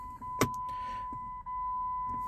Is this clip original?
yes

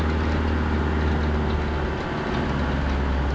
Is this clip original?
yes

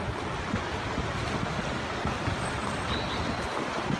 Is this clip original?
yes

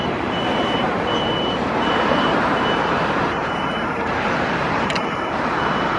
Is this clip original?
no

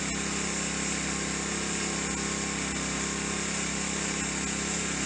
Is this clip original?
yes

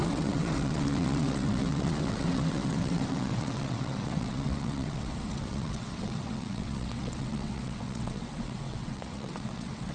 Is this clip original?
no